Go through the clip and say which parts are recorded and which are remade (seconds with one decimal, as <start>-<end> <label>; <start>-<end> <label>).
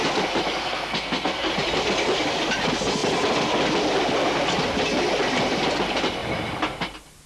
0.0-0.6 recorded; 0.6-1.5 remade; 1.5-7.3 recorded